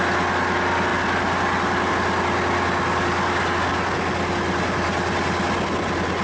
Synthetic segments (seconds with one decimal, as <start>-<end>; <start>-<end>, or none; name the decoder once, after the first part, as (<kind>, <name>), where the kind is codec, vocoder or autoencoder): none